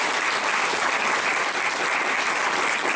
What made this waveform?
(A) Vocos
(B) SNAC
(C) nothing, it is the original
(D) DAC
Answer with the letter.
C